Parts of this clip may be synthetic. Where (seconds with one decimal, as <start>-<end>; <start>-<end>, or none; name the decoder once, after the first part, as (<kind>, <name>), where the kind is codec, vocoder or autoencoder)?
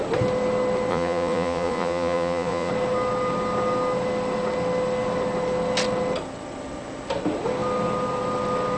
0.9-2.7 (vocoder, Vocos)